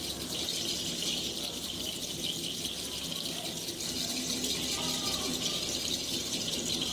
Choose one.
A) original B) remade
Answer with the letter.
A